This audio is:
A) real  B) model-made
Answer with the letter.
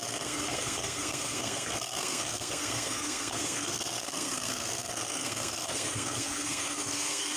B